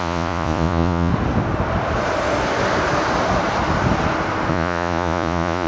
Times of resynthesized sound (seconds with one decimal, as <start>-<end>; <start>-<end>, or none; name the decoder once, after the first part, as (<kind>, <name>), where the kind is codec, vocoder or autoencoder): 0.0-1.1 (vocoder, Vocos); 4.5-5.7